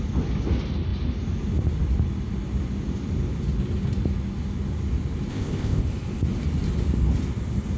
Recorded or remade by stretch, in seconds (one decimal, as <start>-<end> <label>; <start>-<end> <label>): 0.0-5.3 recorded; 5.3-5.8 remade; 5.8-7.8 recorded